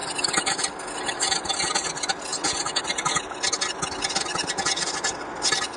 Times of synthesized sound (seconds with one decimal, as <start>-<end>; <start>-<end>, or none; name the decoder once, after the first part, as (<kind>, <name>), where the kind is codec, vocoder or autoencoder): none